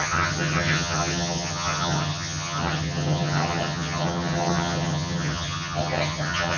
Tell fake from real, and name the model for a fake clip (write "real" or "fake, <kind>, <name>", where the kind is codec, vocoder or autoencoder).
fake, vocoder, HiFi-GAN